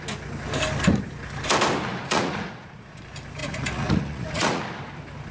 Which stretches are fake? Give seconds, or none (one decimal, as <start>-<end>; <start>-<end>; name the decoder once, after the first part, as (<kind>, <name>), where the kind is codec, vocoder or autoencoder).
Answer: 1.9-3.0 (vocoder, Vocos); 3.4-4.6